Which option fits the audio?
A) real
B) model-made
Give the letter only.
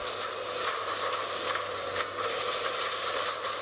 A